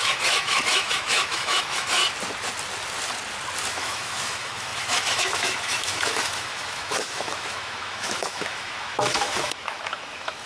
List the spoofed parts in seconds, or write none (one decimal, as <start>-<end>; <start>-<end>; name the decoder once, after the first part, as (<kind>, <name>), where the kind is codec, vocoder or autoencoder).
0.0-2.0 (autoencoder, DAC-VAE); 3.7-10.5